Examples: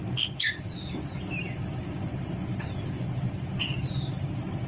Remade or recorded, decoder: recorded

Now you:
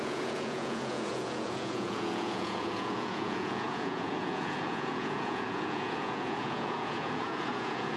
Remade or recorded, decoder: remade, vocoder, Vocos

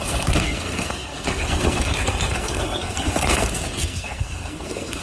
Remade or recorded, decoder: remade, codec, SNAC